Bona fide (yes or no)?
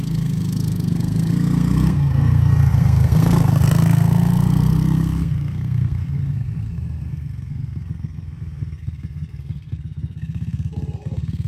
no